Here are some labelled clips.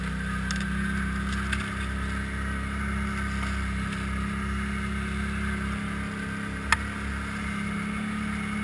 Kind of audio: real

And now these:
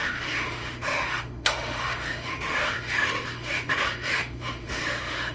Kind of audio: fake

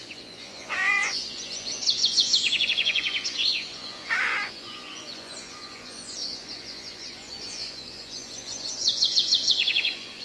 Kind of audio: fake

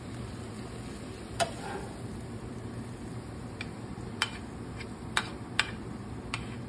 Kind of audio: real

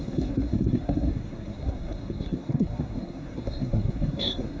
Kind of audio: fake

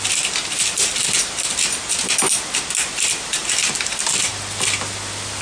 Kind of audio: real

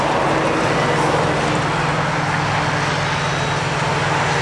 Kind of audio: real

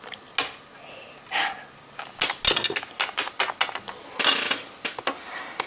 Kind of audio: real